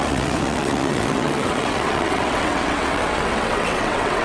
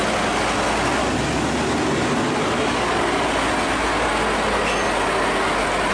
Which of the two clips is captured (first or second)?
second